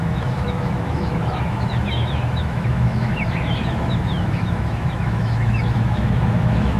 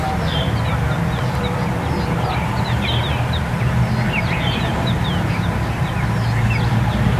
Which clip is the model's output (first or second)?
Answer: first